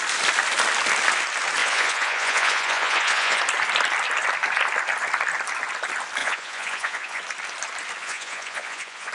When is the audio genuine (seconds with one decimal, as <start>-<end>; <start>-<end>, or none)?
0.0-1.6; 3.4-6.2; 7.2-8.0